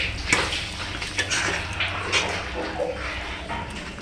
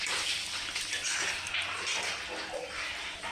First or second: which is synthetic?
second